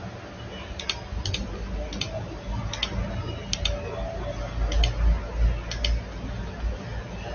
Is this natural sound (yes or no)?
yes